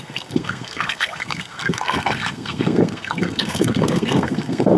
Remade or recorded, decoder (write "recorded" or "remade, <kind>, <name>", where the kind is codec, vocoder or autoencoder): remade, codec, SNAC